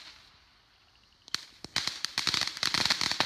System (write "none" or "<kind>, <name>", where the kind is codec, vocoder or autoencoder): none